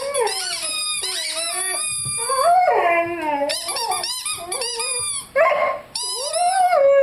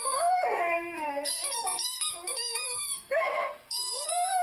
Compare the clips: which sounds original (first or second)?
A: first